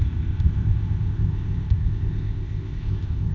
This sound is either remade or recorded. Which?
remade